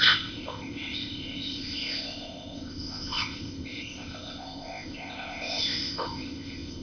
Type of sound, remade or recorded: remade